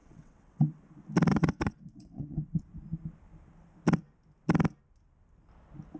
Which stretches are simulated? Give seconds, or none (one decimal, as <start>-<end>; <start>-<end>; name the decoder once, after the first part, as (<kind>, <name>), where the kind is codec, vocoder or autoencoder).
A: 0.0-0.8 (vocoder, WaveNeXt); 1.3-2.6